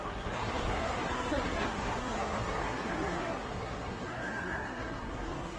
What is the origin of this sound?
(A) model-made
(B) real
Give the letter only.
A